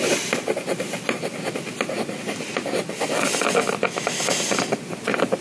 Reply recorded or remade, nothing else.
recorded